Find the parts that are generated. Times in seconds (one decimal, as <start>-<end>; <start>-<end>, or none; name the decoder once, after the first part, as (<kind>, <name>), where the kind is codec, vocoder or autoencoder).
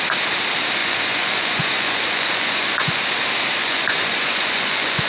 0.8-3.0 (vocoder, Vocos); 3.6-5.1